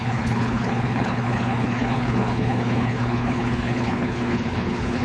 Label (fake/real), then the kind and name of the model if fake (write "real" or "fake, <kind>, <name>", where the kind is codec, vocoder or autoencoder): fake, codec, HILCodec